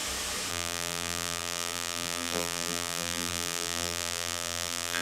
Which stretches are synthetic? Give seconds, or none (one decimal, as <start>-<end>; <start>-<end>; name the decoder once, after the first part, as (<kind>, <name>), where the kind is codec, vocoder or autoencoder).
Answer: 0.5-5.0 (vocoder, BigVGAN v2)